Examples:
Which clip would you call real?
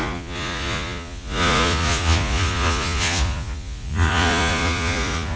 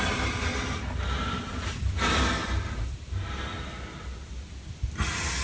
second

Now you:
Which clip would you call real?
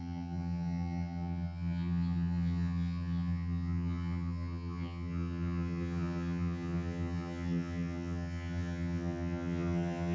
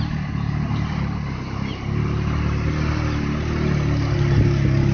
second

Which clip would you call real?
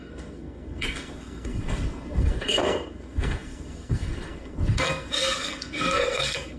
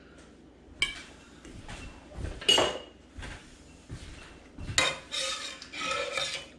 second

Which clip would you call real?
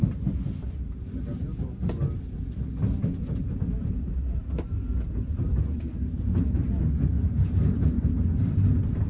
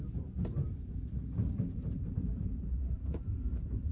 first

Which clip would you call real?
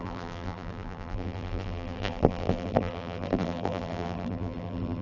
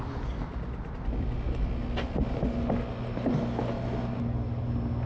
second